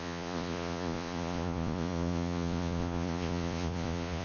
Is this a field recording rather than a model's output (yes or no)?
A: no